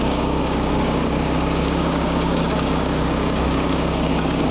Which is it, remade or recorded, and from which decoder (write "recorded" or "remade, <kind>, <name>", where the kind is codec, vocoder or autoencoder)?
remade, codec, DAC